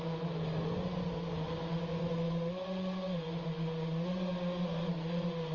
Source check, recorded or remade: recorded